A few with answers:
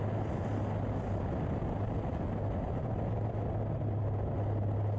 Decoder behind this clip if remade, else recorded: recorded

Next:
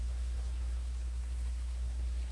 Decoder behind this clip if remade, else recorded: remade, codec, SNAC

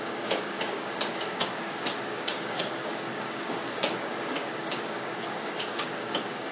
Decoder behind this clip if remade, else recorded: remade, codec, DAC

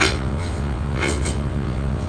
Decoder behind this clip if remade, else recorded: remade, vocoder, WaveNeXt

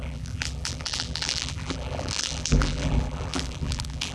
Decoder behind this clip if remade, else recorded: remade, vocoder, BigVGAN v2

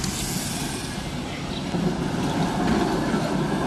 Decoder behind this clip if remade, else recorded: recorded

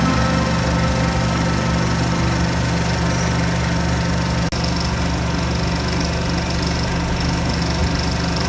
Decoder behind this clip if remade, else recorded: recorded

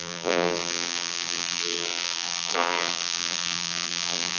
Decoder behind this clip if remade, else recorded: remade, vocoder, BigVGAN v2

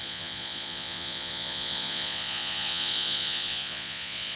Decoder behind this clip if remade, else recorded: remade, vocoder, Vocos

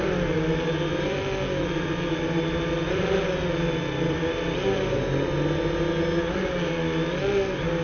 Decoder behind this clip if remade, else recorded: recorded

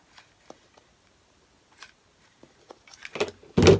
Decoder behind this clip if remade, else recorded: recorded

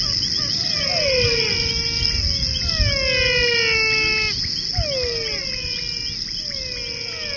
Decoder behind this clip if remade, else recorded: recorded